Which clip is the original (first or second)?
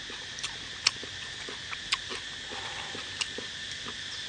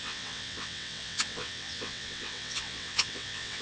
first